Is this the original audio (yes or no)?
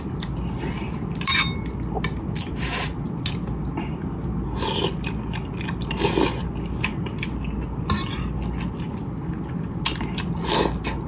yes